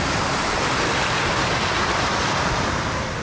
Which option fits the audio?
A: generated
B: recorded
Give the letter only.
B